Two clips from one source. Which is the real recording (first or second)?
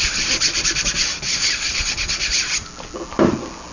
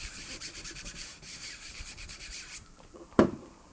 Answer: first